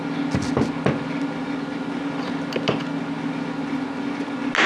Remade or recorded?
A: recorded